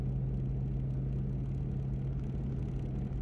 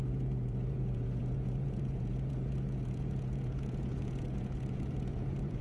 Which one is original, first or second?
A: first